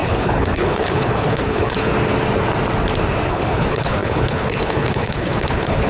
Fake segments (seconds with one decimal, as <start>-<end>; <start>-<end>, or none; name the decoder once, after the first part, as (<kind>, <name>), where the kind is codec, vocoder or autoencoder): 0.0-1.9 (codec, HILCodec); 3.3-5.9